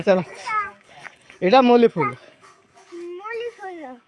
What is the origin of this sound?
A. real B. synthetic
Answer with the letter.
B